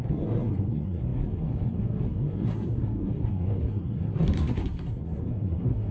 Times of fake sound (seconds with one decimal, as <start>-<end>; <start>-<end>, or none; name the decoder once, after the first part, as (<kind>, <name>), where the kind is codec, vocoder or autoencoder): 0.0-5.9 (codec, SNAC)